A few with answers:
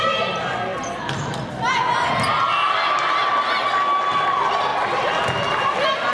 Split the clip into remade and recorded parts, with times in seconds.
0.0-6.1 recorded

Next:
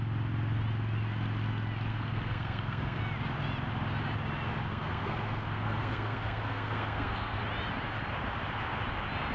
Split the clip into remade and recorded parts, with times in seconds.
0.0-1.9 recorded; 1.9-3.0 remade; 3.0-4.7 recorded; 4.7-7.4 remade; 7.4-9.3 recorded

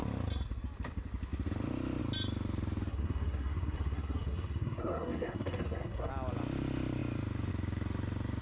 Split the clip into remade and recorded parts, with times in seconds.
0.0-2.9 recorded; 2.9-6.1 remade; 6.1-8.4 recorded

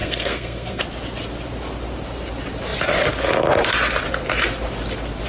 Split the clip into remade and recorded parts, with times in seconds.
0.0-0.8 remade; 0.8-5.3 recorded

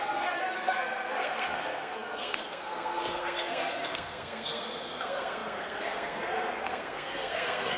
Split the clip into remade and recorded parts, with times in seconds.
0.0-7.8 remade